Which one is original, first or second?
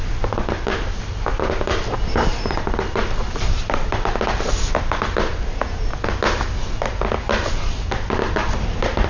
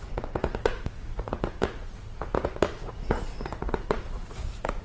first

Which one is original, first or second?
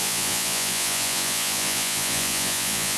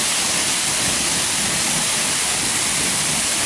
second